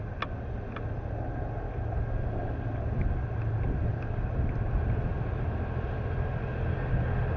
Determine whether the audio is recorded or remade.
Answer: recorded